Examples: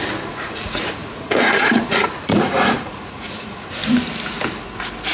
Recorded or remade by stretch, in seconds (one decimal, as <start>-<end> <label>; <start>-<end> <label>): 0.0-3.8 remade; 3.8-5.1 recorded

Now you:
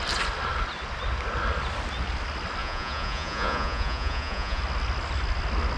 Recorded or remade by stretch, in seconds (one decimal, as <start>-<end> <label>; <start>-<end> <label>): 0.0-2.6 recorded; 2.6-4.6 remade; 4.6-5.8 recorded

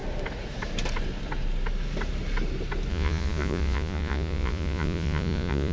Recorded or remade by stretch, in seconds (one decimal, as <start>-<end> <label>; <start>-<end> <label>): 0.0-2.9 recorded; 2.9-5.7 remade